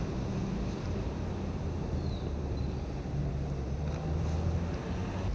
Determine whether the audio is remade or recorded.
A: recorded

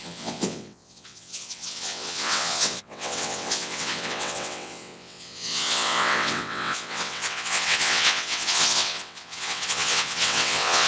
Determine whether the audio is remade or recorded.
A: remade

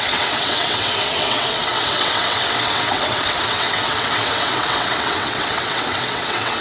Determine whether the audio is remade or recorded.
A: remade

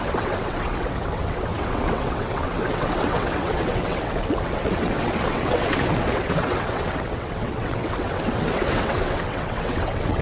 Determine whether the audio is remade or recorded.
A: remade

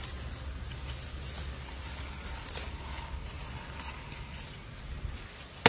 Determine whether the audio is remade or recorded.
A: recorded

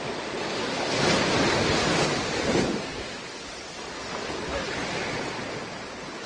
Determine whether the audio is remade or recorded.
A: recorded